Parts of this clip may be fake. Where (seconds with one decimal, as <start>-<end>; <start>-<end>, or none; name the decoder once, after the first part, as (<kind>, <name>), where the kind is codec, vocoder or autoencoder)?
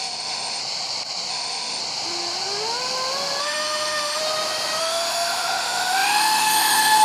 0.0-0.6 (autoencoder, DAC-VAE); 1.3-1.8; 3.4-4.2; 4.8-7.0